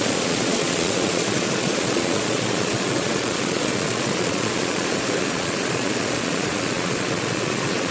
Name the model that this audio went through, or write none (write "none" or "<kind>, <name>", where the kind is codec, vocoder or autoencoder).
vocoder, Vocos